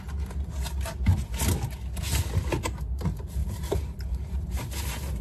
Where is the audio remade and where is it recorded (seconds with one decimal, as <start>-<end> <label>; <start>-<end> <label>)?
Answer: 0.0-3.4 recorded; 3.4-4.8 remade; 4.8-5.2 recorded